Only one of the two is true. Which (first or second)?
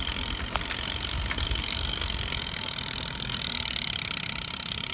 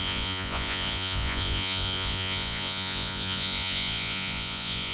first